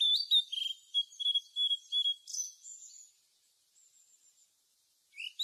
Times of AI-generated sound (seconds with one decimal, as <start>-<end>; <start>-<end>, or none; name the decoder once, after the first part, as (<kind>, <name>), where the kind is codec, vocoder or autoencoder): 2.3-3.1 (vocoder, Vocos)

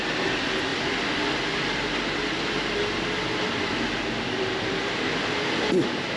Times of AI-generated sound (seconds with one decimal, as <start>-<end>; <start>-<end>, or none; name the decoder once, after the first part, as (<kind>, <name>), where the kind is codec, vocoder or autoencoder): none

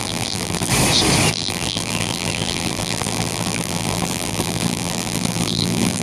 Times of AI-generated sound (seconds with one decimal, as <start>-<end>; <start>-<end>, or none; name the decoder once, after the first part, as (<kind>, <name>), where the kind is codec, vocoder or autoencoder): 0.0-0.7 (vocoder, BigVGAN v2); 1.3-6.0

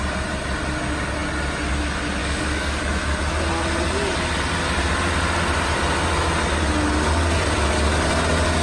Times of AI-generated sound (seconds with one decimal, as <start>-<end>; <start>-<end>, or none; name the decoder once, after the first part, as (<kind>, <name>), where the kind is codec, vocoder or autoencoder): 2.2-2.8 (codec, DAC)

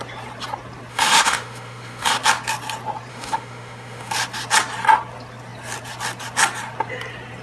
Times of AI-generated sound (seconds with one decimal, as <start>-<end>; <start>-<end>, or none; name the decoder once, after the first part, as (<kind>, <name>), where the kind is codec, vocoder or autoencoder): 0.9-2.1 (autoencoder, DAC-VAE); 3.1-4.1